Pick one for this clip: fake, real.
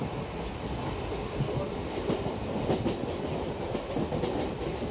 real